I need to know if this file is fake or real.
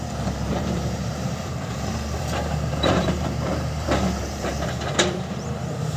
fake